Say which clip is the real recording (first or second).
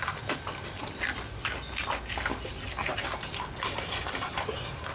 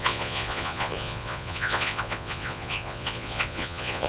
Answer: first